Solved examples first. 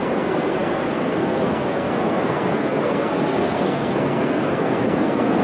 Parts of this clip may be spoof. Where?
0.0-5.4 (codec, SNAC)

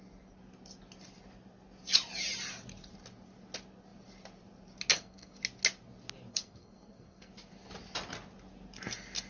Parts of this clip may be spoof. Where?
4.9-5.4 (codec, SNAC); 6.3-7.3